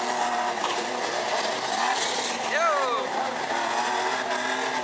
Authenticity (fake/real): real